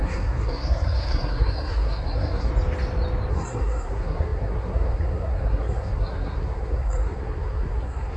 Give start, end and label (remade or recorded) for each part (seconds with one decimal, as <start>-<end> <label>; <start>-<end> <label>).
0.0-2.5 remade; 2.5-3.3 recorded; 3.3-8.2 remade